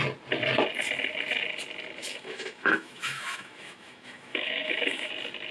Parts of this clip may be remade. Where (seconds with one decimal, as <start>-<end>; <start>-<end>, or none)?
2.0-5.1